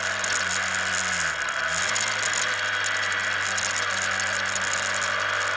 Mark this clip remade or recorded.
recorded